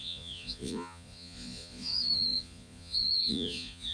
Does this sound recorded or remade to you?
remade